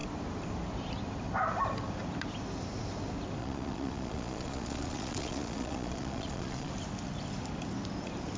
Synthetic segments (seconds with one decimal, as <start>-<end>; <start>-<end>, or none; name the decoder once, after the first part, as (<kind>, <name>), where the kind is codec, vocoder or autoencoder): 3.4-6.7 (vocoder, Vocos)